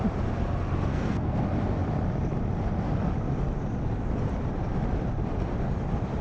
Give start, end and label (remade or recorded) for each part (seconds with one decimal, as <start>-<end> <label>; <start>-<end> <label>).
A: 0.0-0.9 recorded; 0.9-1.4 remade; 1.4-6.2 recorded